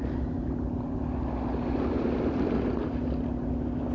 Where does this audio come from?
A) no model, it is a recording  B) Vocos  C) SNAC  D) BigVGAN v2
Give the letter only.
A